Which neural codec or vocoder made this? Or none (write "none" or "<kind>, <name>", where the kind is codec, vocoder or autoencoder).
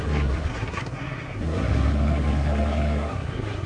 codec, SNAC